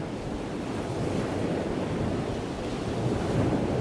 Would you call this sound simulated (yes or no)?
no